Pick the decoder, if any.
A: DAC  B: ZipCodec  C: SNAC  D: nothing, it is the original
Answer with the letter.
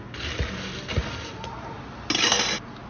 D